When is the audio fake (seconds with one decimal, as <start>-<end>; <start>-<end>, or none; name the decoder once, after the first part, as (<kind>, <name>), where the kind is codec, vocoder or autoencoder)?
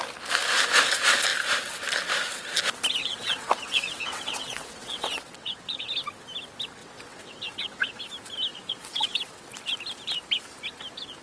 3.0-5.9 (vocoder, WaveNeXt); 6.8-8.0; 8.5-9.4